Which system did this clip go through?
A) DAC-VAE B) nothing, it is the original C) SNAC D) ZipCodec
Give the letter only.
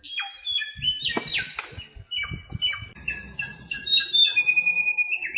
B